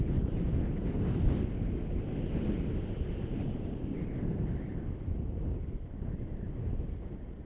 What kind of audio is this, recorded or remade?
recorded